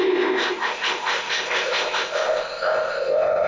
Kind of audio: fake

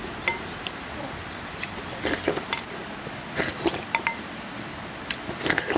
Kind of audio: real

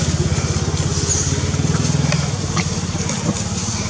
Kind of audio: real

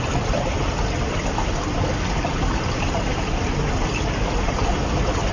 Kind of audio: real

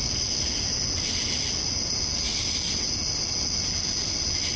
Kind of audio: real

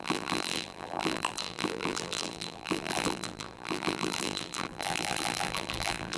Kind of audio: fake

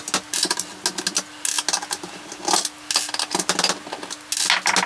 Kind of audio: real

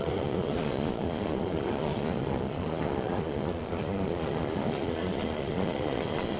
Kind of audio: fake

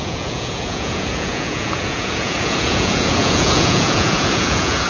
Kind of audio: fake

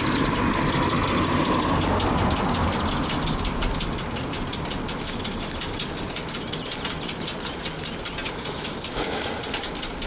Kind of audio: real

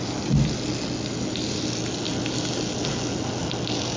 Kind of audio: real